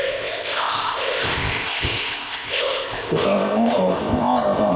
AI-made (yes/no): yes